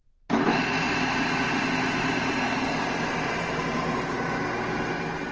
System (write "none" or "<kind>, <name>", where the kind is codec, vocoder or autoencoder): none